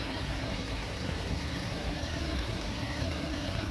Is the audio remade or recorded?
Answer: remade